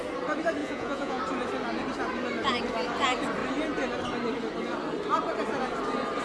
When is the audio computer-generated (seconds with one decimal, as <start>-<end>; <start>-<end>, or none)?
0.6-1.2